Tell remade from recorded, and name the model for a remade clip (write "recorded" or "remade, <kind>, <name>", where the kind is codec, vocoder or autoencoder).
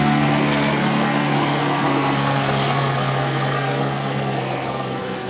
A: remade, codec, SNAC